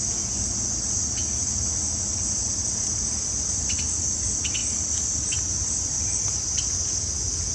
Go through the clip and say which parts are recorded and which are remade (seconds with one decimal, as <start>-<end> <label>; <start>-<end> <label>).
0.0-7.5 recorded